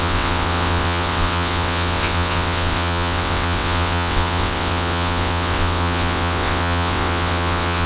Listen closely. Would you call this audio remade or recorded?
remade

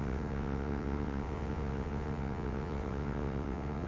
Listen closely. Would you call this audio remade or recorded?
remade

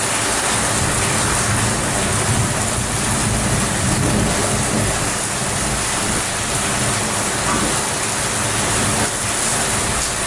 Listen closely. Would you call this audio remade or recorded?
recorded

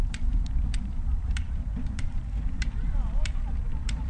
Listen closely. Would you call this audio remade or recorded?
remade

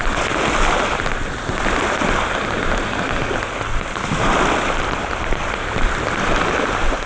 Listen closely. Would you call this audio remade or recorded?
recorded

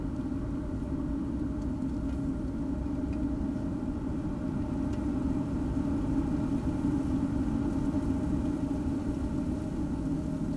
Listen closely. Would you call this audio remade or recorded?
recorded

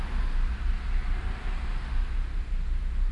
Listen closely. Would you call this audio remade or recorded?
recorded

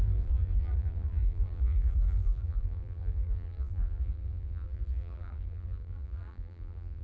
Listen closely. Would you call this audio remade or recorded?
remade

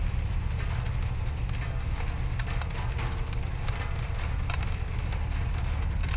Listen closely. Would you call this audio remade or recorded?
recorded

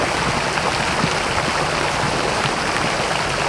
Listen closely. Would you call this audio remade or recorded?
recorded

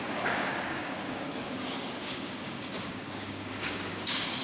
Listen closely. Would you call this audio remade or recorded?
remade